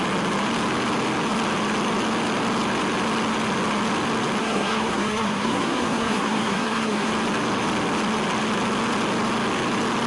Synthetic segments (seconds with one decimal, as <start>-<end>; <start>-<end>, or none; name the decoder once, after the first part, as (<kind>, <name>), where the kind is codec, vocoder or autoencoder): 4.4-7.1 (codec, SNAC)